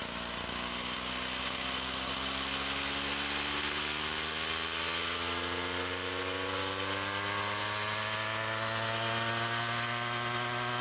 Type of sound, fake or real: real